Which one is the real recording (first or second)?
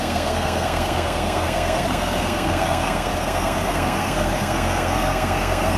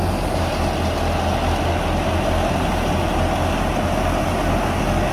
second